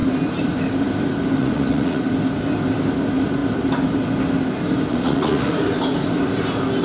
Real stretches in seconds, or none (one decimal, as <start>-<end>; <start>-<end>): 0.0-1.4; 2.0-4.9; 5.5-6.8